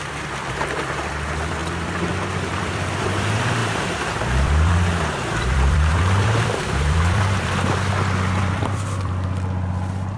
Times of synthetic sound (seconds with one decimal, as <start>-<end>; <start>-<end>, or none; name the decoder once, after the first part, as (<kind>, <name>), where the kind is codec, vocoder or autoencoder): 0.0-10.2 (vocoder, BigVGAN v2)